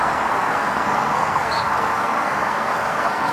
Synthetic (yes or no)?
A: yes